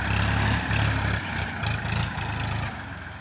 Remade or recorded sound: recorded